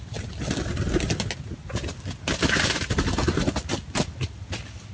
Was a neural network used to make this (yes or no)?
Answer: no